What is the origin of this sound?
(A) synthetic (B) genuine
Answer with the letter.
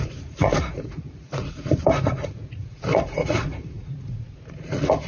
A